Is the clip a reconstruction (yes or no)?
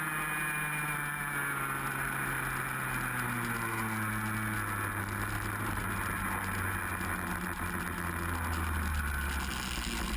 no